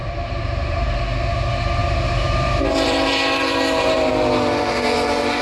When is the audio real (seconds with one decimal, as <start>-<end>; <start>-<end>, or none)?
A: 1.0-1.8; 4.1-5.4